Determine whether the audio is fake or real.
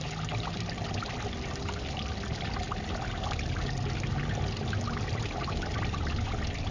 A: real